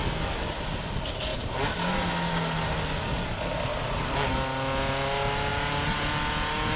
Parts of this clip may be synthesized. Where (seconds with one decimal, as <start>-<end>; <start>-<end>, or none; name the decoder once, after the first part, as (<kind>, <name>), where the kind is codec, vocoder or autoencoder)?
1.3-2.1 (vocoder, BigVGAN v2); 3.7-4.3

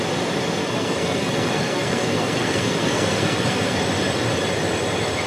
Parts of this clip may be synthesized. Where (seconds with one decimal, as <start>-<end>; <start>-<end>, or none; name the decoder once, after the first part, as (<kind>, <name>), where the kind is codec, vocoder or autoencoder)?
0.6-3.8 (codec, SNAC)

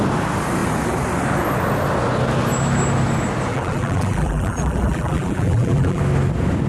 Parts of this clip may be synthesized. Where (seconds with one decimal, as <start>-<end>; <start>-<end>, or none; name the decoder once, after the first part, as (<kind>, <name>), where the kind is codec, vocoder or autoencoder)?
3.5-6.0 (vocoder, BigVGAN v2)